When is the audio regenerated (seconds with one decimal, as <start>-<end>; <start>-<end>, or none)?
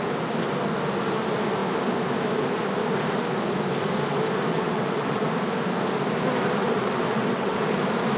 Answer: 4.5-5.2; 6.6-7.6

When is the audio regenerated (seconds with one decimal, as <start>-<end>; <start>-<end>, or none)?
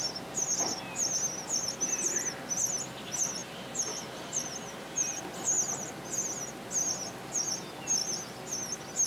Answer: 3.4-5.2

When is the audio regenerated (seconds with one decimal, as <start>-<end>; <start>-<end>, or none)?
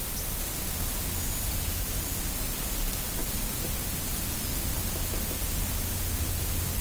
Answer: 3.2-3.8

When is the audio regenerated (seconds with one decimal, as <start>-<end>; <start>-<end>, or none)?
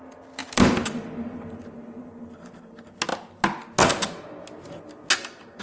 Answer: 0.4-2.6